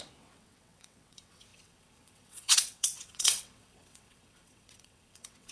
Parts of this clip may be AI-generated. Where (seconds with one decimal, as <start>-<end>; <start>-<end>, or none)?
0.0-5.5